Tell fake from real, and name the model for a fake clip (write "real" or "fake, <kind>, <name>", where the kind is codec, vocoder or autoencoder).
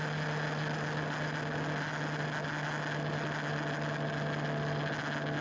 real